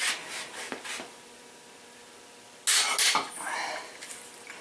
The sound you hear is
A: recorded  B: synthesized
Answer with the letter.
A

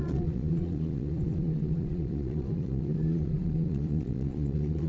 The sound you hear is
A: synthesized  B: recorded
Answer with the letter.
A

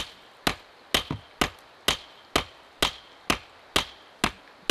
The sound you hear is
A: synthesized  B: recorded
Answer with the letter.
B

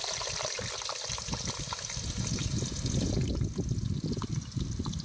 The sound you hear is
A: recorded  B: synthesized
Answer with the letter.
A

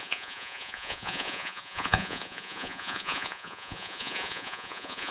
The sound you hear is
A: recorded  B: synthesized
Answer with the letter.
B